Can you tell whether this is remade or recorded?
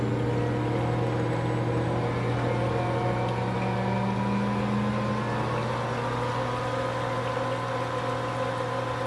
recorded